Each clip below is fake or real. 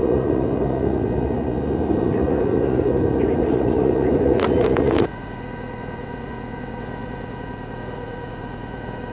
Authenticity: fake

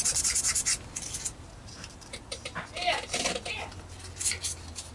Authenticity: real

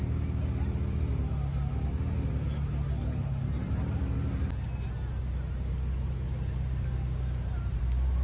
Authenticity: real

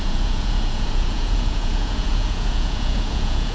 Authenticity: fake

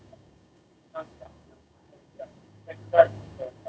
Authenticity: fake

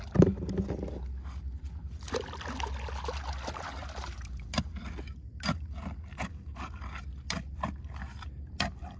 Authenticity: real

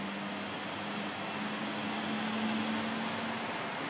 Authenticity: real